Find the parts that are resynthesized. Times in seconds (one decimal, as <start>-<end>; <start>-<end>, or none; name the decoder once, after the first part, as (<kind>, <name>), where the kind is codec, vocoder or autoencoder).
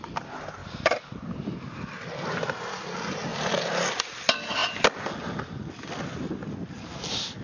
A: 0.6-2.1 (vocoder, BigVGAN v2); 3.3-4.0